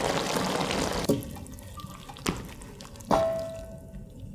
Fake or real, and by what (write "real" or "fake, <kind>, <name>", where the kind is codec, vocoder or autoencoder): real